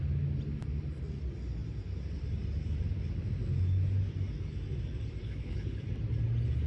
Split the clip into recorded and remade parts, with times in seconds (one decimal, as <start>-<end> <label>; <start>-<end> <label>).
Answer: 0.0-5.2 recorded; 5.2-5.9 remade; 5.9-6.7 recorded